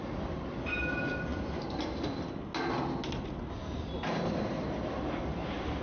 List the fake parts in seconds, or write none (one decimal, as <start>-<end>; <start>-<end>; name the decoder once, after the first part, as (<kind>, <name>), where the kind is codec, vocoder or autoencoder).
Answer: 3.6-5.8 (vocoder, BigVGAN v2)